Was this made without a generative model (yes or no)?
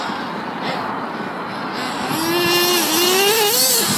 yes